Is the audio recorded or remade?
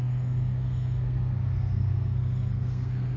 remade